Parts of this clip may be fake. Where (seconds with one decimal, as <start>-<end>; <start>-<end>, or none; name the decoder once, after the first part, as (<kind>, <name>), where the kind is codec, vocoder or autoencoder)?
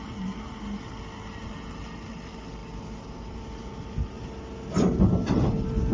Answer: none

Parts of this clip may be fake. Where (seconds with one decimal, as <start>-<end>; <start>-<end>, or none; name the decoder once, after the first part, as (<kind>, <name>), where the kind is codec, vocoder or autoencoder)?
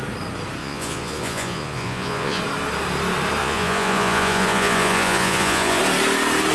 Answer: 0.6-2.4 (vocoder, Vocos); 3.4-5.8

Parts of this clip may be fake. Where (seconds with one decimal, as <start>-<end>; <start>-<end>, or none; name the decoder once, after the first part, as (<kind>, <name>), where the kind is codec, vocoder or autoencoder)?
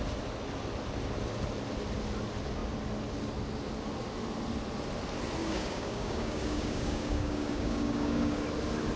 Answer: 5.4-8.4 (codec, DAC)